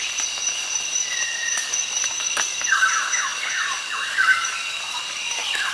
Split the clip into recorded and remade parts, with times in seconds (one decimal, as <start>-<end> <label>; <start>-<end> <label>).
0.0-5.7 remade

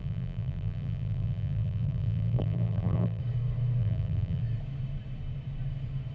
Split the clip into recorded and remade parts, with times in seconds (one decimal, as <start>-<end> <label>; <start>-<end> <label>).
0.0-3.2 remade; 3.2-3.8 recorded; 3.8-4.4 remade; 4.4-6.1 recorded

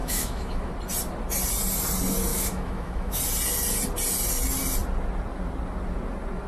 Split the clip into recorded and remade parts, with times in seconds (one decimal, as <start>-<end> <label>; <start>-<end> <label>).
0.0-0.7 remade; 0.7-2.3 recorded; 2.3-3.2 remade; 3.2-6.5 recorded

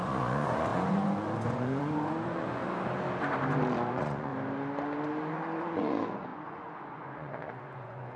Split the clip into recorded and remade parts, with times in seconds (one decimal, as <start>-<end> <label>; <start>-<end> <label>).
0.0-2.6 remade; 2.6-3.9 recorded; 3.9-4.3 remade; 4.3-5.3 recorded; 5.3-8.2 remade

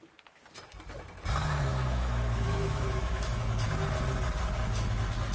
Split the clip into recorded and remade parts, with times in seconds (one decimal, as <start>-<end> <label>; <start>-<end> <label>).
0.0-1.7 recorded; 1.7-3.4 remade; 3.4-5.3 recorded

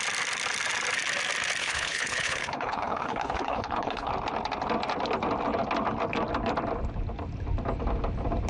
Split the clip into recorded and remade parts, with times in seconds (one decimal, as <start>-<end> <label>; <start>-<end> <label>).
0.0-1.6 recorded; 1.6-4.1 remade; 4.1-8.5 recorded

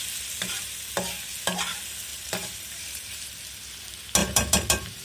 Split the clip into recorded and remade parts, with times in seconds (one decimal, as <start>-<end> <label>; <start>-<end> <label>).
0.0-2.1 recorded; 2.1-3.3 remade; 3.3-4.2 recorded; 4.2-5.0 remade

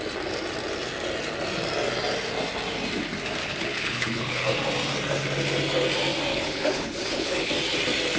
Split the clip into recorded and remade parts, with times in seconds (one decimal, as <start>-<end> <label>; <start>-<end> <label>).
0.0-3.4 recorded; 3.4-4.5 remade; 4.5-6.3 recorded; 6.3-7.5 remade; 7.5-8.2 recorded